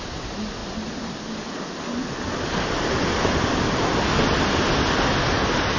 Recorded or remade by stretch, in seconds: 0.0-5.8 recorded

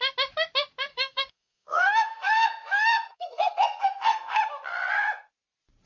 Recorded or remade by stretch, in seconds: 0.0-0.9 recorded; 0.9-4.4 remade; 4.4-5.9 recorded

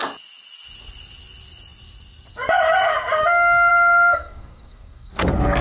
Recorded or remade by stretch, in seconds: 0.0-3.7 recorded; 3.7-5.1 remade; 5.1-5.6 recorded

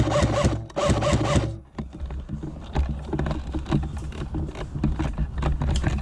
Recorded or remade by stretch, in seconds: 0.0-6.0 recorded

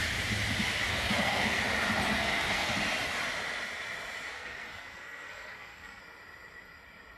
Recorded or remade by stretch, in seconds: 0.0-0.9 recorded; 0.9-1.6 remade; 1.6-2.1 recorded; 2.1-2.7 remade; 2.7-4.3 recorded; 4.3-6.0 remade; 6.0-7.2 recorded

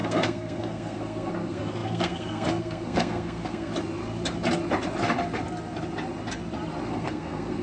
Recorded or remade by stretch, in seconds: 0.0-3.7 remade; 3.7-6.9 recorded; 6.9-7.6 remade

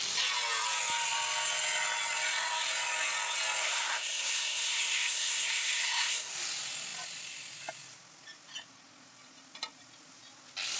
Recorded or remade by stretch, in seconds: 0.0-3.6 recorded; 3.6-6.3 remade; 6.3-10.8 recorded